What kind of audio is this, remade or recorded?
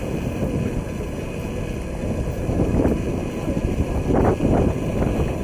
recorded